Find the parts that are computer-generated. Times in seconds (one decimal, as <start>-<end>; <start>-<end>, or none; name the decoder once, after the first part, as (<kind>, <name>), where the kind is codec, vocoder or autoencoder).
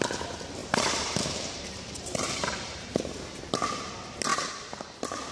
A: 0.6-3.8 (vocoder, BigVGAN v2)